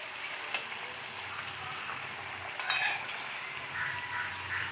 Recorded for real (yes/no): yes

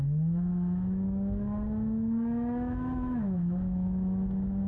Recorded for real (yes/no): no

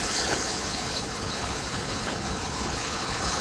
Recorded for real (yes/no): no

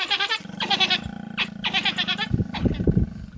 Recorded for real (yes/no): yes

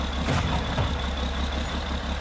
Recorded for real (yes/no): yes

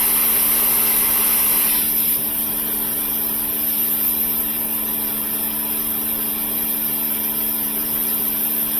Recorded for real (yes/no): yes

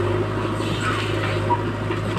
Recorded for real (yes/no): yes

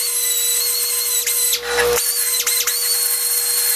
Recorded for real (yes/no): yes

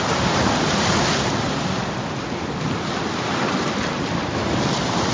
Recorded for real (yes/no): yes